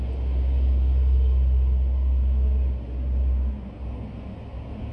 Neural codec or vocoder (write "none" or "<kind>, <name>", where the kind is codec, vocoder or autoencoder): none